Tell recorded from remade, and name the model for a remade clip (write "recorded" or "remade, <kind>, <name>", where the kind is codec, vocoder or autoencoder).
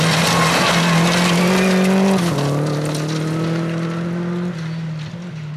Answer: recorded